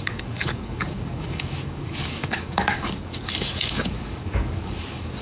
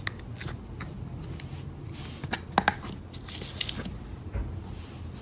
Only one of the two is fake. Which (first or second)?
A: first